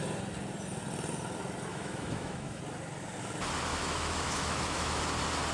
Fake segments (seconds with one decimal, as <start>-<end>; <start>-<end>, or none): 1.7-2.6; 3.7-5.0